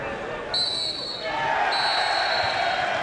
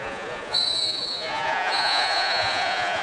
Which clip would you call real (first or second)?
first